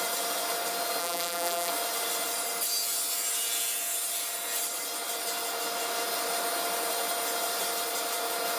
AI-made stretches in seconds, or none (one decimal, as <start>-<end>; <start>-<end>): 1.0-1.7